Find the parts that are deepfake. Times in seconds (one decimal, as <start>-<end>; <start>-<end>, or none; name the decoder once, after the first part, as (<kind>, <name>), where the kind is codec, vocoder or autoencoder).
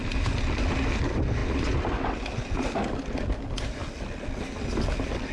none